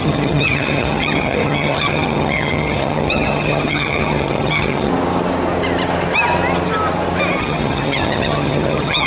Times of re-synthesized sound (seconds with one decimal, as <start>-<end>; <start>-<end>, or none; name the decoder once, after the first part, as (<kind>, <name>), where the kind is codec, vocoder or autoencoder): 0.0-4.9 (vocoder, HiFi-GAN); 7.4-9.1